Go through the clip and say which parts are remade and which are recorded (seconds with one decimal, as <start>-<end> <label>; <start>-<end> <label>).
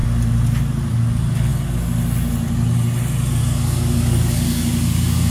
0.0-3.4 recorded; 3.4-5.3 remade